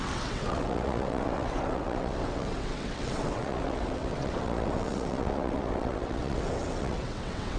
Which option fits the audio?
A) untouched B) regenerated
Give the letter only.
B